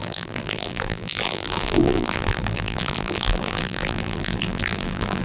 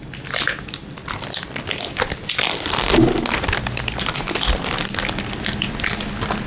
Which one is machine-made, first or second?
first